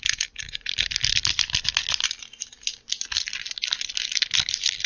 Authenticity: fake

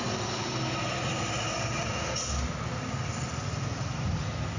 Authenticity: real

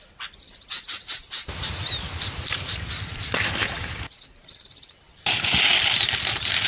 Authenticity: real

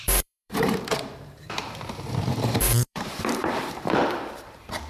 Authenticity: fake